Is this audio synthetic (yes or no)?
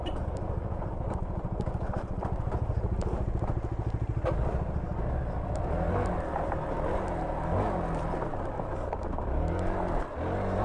no